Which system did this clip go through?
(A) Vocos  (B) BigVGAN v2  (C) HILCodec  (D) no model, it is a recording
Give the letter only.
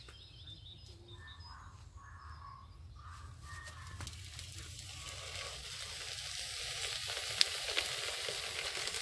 D